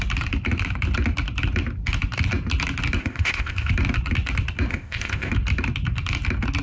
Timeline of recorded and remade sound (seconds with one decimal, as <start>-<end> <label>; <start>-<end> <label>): 0.0-3.0 recorded; 3.0-3.7 remade; 3.7-4.7 recorded; 4.7-5.3 remade; 5.3-6.6 recorded